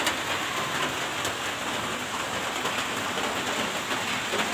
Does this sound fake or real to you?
real